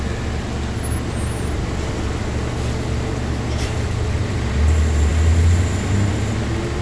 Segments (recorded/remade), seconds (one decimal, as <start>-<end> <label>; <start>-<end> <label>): 0.0-6.8 recorded